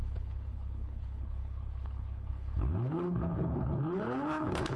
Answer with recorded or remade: remade